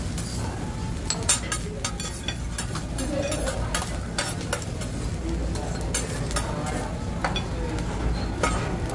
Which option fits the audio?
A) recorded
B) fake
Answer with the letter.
A